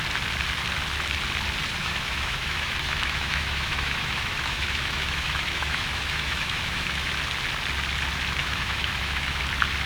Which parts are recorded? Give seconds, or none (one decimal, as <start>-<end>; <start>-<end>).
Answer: 0.0-1.8; 7.1-8.4; 9.4-9.9